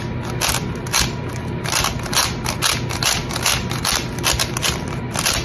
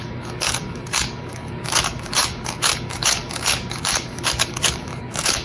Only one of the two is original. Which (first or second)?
first